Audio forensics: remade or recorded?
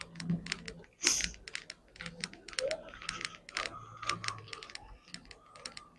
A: recorded